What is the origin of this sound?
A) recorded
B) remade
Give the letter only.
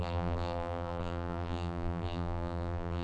B